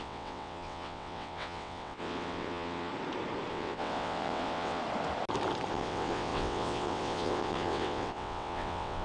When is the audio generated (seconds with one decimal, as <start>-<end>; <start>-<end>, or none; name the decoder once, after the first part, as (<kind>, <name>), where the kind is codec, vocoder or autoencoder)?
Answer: 0.0-2.9 (vocoder, WaveNeXt); 3.5-4.8; 5.7-9.0